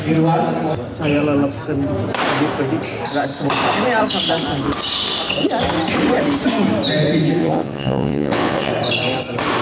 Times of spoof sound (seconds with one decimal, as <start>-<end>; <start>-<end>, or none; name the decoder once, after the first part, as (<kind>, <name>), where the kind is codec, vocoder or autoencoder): 7.4-8.7 (vocoder, WaveNeXt)